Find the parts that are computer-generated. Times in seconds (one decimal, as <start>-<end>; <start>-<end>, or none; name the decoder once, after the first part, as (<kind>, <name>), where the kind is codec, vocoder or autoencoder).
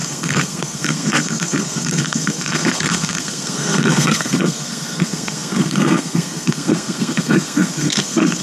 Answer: 0.0-8.4 (codec, SNAC)